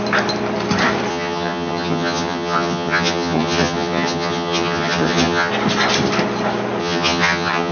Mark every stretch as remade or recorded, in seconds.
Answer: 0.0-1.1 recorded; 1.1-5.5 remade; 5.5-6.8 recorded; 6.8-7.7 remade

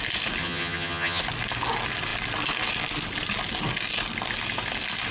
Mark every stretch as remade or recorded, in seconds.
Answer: 0.0-0.4 recorded; 0.4-1.2 remade; 1.2-5.1 recorded

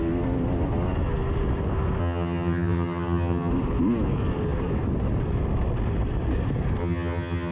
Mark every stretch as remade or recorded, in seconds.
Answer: 0.0-2.0 recorded; 2.0-3.5 remade; 3.5-6.8 recorded; 6.8-7.5 remade

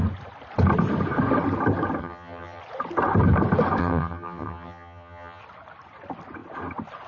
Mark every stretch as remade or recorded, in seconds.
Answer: 0.0-2.0 recorded; 2.0-2.6 remade; 2.6-3.8 recorded; 3.8-5.4 remade; 5.4-7.1 recorded

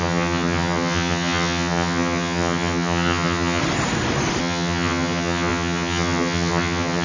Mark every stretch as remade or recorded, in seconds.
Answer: 0.0-3.6 remade; 3.6-4.4 recorded; 4.4-7.0 remade